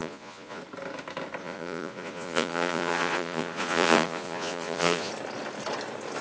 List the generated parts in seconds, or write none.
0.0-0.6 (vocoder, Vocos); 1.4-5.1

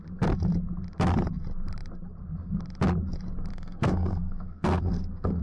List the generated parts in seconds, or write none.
3.5-5.4 (codec, SNAC)

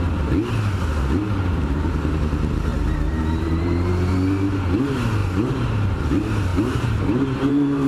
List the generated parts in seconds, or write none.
2.7-4.1 (vocoder, BigVGAN v2); 5.2-6.0; 6.5-7.9

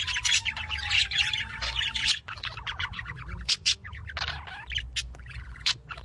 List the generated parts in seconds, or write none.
0.0-4.0 (vocoder, Vocos); 5.0-6.0

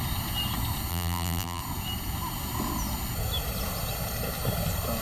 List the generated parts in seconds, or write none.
0.9-1.6 (vocoder, BigVGAN v2)